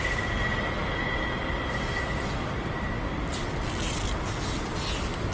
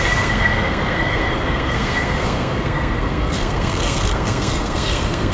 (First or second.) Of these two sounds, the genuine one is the first